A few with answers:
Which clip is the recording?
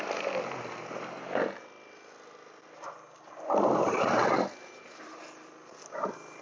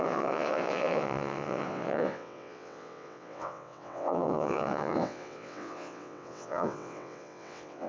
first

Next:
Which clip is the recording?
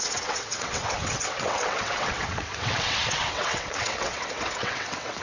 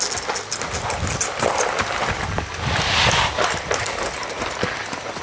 second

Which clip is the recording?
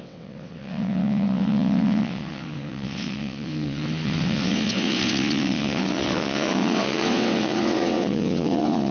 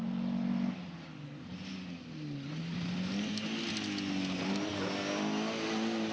second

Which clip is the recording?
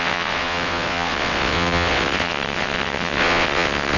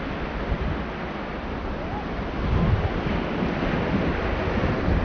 second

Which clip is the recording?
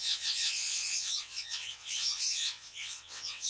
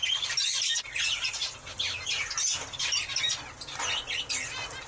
second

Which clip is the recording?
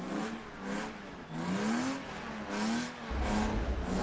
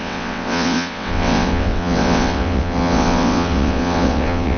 first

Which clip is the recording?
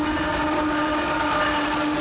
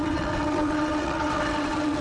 first